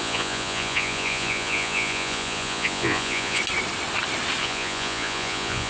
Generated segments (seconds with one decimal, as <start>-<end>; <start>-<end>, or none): 0.0-3.4; 4.4-5.7